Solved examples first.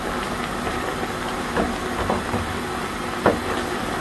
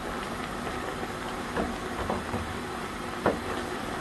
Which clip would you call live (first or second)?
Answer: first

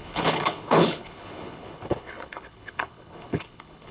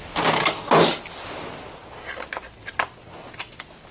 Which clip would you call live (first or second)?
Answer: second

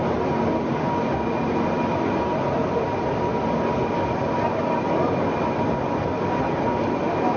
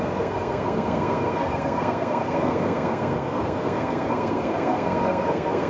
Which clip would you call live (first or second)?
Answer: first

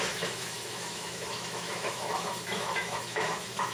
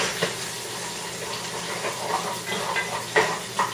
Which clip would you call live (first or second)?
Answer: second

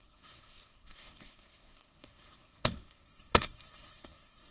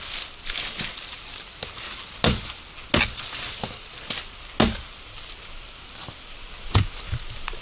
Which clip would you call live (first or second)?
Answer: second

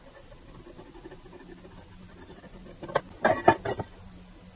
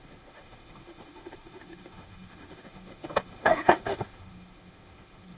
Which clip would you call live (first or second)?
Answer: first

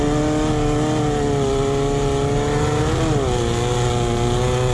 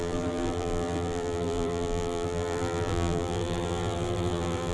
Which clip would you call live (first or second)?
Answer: first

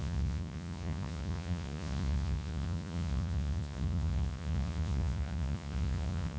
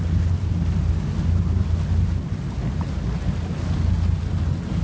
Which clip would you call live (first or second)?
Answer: second